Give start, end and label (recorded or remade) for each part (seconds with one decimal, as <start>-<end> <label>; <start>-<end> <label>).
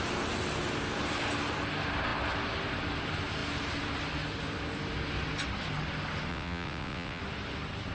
0.0-6.3 recorded; 6.3-7.2 remade; 7.2-7.9 recorded